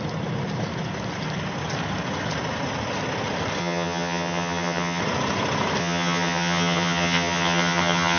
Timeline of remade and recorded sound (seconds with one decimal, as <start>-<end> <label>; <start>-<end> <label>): 0.0-3.6 recorded; 3.6-5.0 remade; 5.0-5.8 recorded; 5.8-8.2 remade

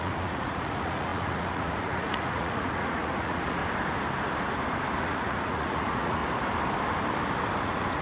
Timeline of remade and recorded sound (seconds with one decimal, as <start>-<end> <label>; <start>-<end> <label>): 0.0-3.6 remade; 3.6-5.0 recorded; 5.0-6.2 remade; 6.2-7.6 recorded; 7.6-8.0 remade

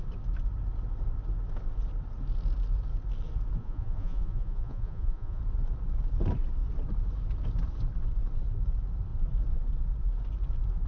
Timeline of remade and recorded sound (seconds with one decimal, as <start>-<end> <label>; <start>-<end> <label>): 0.0-3.6 recorded; 3.6-5.4 remade; 5.4-10.9 recorded

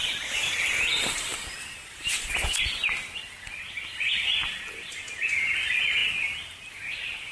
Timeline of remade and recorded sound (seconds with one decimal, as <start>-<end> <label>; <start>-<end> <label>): 0.0-7.3 recorded

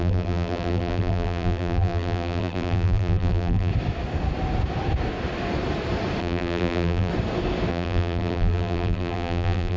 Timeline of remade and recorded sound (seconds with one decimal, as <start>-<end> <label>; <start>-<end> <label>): 0.0-3.7 remade; 3.7-6.2 recorded; 6.2-7.1 remade; 7.1-7.7 recorded; 7.7-9.8 remade

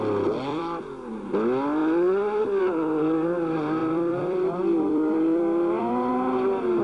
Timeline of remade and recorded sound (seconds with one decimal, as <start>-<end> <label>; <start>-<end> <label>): 0.0-0.5 recorded; 0.5-1.1 remade; 1.1-3.8 recorded; 3.8-6.1 remade; 6.1-6.8 recorded